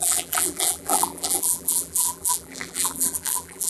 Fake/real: fake